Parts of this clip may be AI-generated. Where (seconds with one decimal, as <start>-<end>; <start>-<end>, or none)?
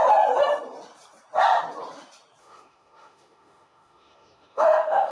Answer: 2.4-5.1